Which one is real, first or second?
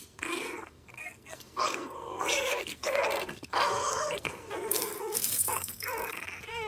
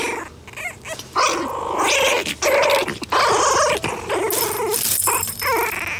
second